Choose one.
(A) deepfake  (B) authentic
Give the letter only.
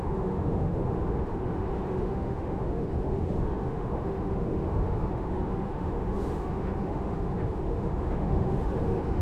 A